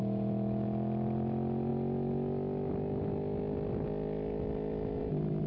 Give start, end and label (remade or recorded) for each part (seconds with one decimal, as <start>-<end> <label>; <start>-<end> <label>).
0.0-5.5 recorded